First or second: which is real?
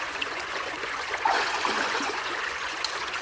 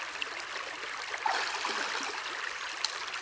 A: second